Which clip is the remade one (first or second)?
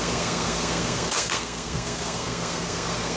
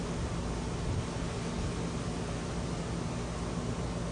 first